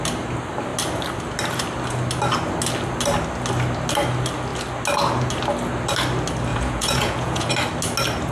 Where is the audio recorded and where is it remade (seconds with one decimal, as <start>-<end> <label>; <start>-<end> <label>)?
0.0-6.5 recorded; 6.5-7.5 remade; 7.5-8.3 recorded